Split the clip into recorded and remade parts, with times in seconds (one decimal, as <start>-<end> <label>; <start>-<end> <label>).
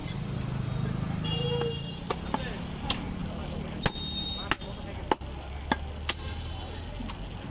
0.0-7.5 recorded